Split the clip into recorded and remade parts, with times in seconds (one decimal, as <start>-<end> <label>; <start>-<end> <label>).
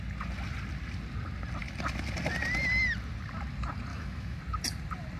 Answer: 0.0-3.9 recorded; 3.9-4.4 remade; 4.4-5.2 recorded